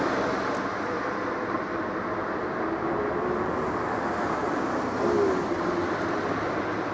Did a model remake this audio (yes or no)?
no